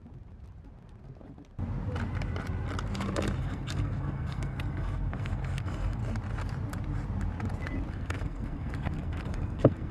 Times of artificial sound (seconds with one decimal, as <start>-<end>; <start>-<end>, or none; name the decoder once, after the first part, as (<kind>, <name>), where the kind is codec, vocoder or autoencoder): 3.4-6.0 (codec, SNAC); 7.9-9.9